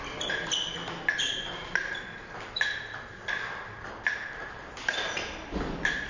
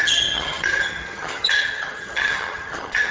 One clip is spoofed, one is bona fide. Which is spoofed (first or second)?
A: second